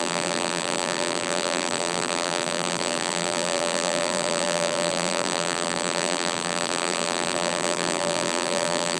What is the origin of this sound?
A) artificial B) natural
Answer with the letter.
A